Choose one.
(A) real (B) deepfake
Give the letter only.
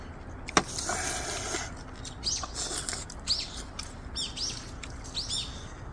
A